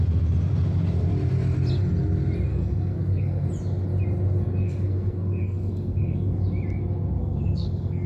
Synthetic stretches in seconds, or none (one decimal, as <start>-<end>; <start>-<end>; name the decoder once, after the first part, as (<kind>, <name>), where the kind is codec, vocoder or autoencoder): 2.5-3.5 (codec, SNAC); 4.6-6.4; 7.2-8.1

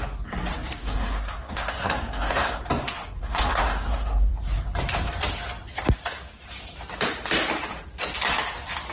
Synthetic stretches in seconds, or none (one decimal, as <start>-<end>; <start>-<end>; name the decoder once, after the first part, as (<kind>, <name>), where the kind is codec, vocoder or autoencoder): 0.8-2.6 (codec, SNAC); 3.2-4.3

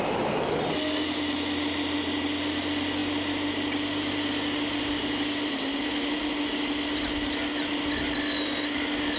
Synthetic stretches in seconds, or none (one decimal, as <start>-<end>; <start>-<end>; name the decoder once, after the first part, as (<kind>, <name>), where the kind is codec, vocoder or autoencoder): none